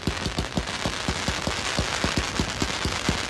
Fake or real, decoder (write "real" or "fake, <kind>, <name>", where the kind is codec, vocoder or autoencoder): real